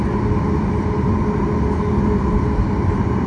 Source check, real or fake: real